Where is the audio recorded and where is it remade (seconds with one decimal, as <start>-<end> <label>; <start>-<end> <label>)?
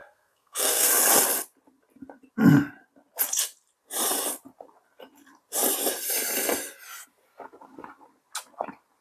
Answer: 0.0-0.9 remade; 0.9-9.0 recorded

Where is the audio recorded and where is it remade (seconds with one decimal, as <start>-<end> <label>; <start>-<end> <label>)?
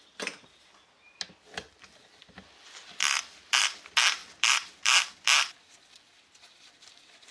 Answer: 0.0-7.3 remade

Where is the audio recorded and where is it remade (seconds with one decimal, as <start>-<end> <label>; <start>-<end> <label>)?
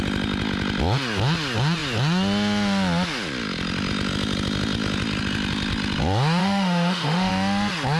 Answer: 0.0-6.4 recorded; 6.4-7.3 remade; 7.3-8.0 recorded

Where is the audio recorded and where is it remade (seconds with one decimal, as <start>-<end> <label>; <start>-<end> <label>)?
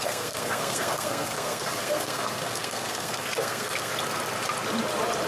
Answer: 0.0-3.9 remade; 3.9-5.3 recorded